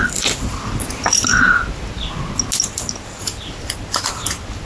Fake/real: real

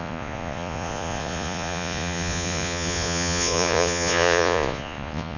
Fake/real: fake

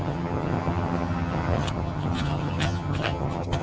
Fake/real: fake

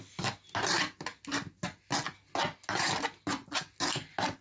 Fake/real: real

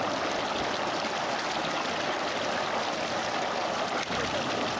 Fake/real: real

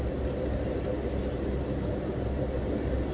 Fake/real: real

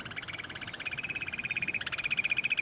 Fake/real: real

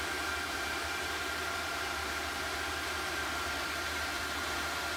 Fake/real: fake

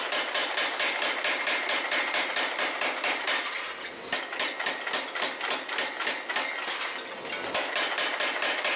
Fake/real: real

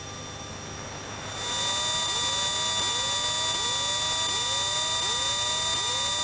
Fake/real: real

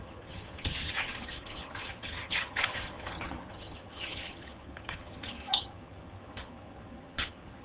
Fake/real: fake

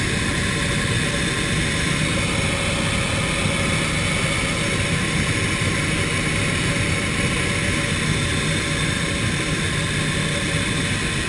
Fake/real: real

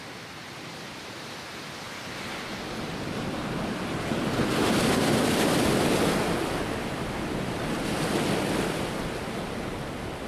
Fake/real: real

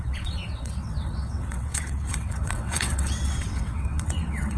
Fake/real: fake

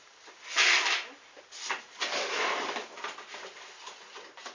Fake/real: real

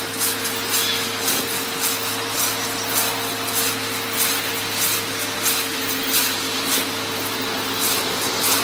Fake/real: real